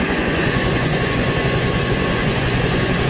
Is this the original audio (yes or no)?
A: no